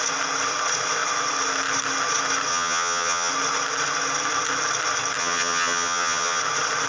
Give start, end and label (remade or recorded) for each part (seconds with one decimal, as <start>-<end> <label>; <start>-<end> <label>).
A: 0.0-2.5 recorded; 2.5-3.3 remade; 3.3-5.2 recorded; 5.2-6.4 remade; 6.4-6.9 recorded